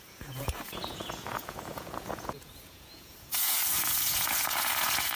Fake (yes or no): yes